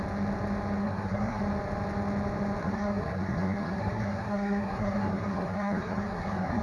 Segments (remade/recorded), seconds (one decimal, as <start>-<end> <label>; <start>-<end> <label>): 0.0-0.8 recorded; 0.8-1.4 remade; 1.4-2.6 recorded; 2.6-6.6 remade